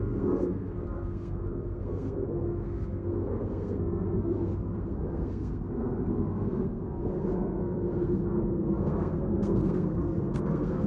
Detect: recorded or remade remade